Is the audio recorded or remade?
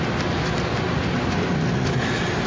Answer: recorded